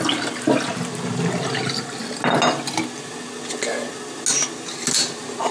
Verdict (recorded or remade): recorded